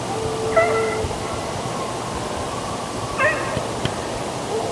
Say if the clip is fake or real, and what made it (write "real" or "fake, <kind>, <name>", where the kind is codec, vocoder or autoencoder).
real